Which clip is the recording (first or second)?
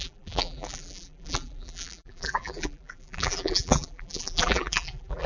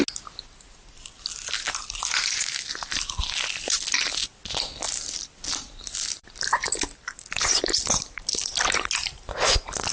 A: second